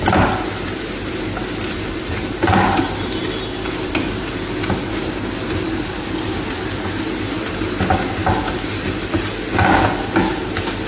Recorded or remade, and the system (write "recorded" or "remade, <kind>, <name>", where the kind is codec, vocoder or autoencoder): recorded